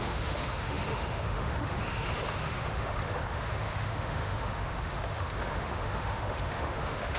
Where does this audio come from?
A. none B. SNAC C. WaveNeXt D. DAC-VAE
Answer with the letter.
D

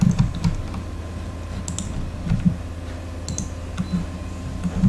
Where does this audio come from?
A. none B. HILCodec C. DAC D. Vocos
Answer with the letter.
A